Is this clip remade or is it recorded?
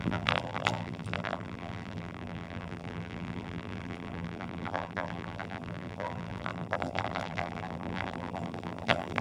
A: remade